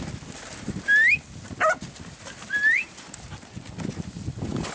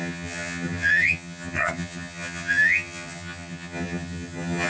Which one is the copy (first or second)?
second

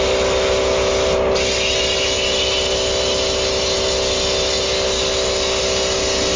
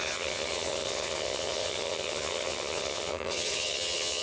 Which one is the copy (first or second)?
second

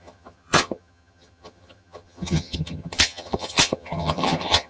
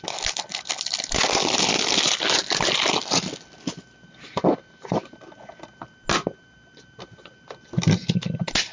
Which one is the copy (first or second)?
first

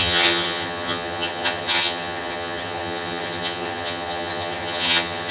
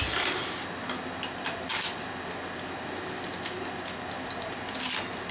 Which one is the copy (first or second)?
first